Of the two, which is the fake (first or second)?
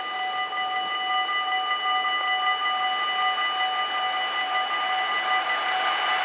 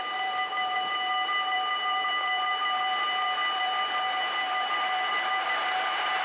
second